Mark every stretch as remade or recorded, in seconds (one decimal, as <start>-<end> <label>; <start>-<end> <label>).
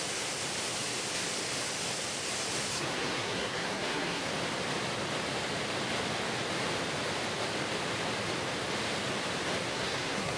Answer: 0.0-2.7 recorded; 2.7-4.3 remade; 4.3-9.7 recorded; 9.7-10.4 remade